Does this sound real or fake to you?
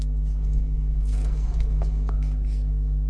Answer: fake